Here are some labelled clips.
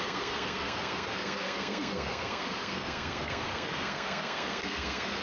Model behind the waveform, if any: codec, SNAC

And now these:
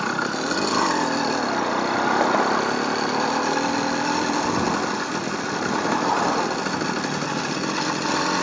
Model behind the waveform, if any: none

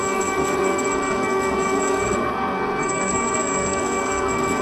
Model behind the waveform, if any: codec, SNAC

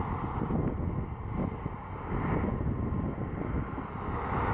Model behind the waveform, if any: none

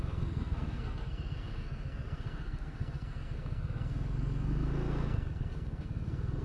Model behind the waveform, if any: codec, SNAC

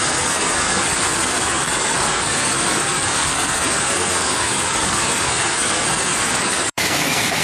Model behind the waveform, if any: codec, SNAC